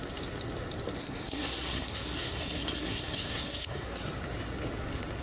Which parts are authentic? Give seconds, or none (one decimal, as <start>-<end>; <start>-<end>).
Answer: 0.0-1.0; 4.1-5.2